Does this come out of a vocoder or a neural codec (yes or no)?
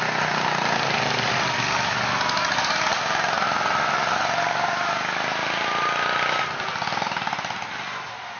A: no